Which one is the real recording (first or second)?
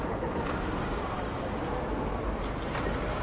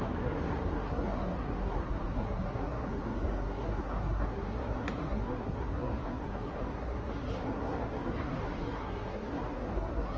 first